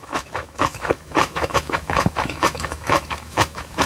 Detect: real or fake fake